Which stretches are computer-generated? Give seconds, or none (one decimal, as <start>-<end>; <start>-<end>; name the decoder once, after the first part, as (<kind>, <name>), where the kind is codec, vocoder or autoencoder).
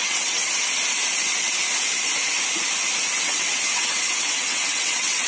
0.0-0.4 (vocoder, WaveNeXt); 3.2-5.3